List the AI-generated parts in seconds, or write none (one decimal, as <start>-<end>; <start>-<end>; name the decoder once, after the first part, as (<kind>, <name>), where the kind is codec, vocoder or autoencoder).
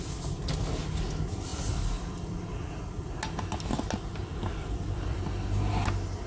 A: 1.5-2.5 (vocoder, BigVGAN v2); 4.2-5.2